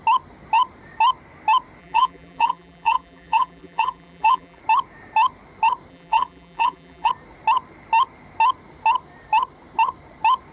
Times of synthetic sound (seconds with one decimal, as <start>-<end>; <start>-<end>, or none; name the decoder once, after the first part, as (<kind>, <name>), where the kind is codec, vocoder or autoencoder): 1.8-4.6 (vocoder, BigVGAN v2); 5.9-7.1